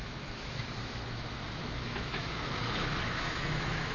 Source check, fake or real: fake